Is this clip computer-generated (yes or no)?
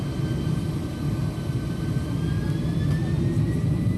no